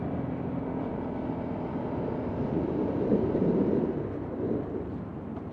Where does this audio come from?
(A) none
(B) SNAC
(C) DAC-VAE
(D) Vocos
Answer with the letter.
A